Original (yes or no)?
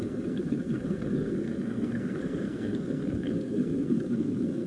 no